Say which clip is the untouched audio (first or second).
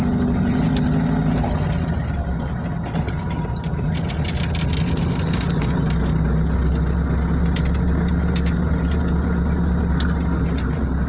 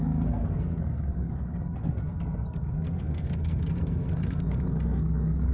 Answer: first